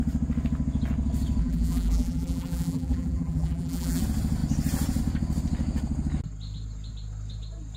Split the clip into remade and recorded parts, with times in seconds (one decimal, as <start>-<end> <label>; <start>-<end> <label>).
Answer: 0.0-1.4 recorded; 1.4-4.0 remade; 4.0-7.8 recorded